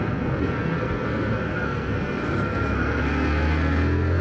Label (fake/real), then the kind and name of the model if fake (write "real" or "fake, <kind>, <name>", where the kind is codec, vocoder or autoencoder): fake, codec, SNAC